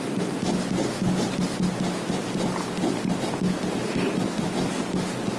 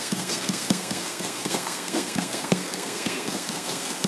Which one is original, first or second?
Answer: first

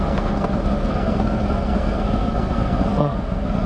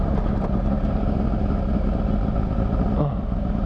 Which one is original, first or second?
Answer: second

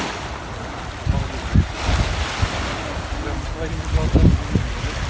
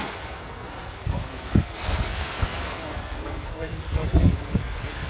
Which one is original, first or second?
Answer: first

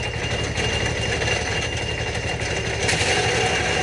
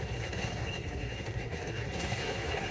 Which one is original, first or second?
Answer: first